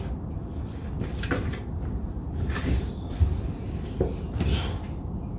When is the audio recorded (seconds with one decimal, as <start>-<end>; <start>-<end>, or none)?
0.0-1.1; 2.9-5.4